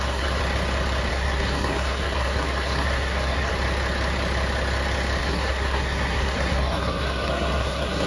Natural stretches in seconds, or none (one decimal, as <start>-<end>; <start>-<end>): 0.4-1.1; 3.5-5.2